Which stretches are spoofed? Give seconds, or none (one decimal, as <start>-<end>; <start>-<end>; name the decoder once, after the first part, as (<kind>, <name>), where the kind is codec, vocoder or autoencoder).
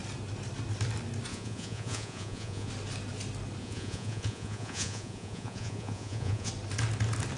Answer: 1.3-2.7 (vocoder, Vocos); 3.6-6.5